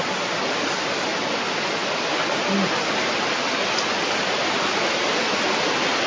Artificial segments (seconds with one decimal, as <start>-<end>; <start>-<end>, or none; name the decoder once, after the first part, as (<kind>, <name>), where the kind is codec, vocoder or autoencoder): none